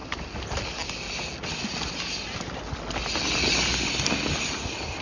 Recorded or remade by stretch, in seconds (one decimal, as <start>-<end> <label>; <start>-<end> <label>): 0.0-5.0 recorded